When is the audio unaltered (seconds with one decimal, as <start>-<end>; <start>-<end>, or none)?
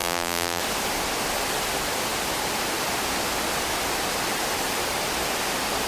0.6-5.9